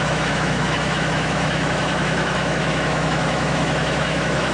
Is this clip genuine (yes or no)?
no